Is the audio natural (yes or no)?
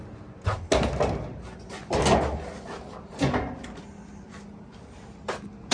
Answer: yes